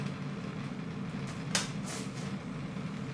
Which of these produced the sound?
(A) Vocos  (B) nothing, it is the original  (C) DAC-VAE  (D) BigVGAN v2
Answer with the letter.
B